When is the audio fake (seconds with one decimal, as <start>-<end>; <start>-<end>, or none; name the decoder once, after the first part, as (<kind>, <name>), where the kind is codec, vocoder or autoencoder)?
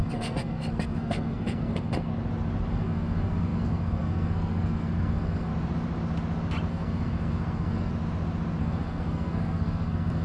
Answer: 0.0-2.1 (codec, SNAC); 2.7-5.5; 6.7-7.9; 8.6-10.2